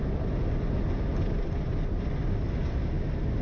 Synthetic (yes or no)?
no